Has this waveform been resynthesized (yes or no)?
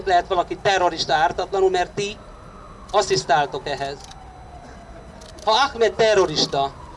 no